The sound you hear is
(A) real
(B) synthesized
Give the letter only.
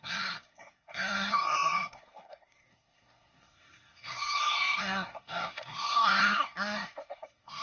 B